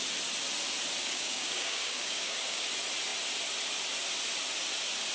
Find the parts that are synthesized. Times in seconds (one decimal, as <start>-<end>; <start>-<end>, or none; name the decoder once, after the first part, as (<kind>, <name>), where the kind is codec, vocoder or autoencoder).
1.0-2.7 (codec, DAC)